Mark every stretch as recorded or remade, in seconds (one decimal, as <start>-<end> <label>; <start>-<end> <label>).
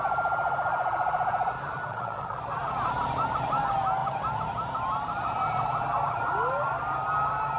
0.0-1.9 recorded; 1.9-2.4 remade; 2.4-7.6 recorded